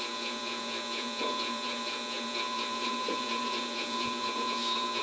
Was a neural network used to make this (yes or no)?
yes